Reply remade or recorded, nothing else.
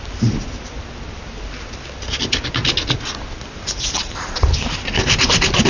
recorded